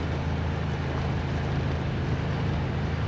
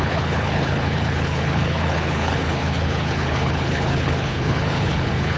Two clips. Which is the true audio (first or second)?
first